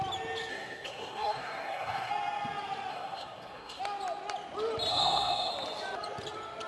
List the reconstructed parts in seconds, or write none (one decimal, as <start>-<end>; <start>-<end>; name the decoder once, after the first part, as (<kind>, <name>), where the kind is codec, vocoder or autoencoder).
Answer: 0.5-2.1 (codec, SNAC); 2.9-3.8; 4.9-5.5